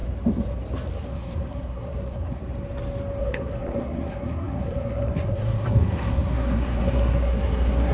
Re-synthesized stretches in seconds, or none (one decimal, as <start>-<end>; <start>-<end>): 0.9-2.4; 3.2-7.9